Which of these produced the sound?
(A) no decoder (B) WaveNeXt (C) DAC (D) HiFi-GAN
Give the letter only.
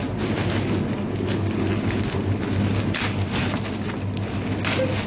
A